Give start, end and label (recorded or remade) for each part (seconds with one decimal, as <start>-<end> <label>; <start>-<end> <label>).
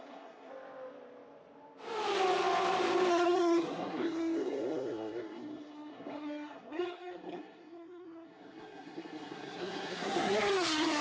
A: 0.0-0.5 remade; 0.5-3.1 recorded; 3.1-11.0 remade